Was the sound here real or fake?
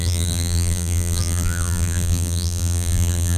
fake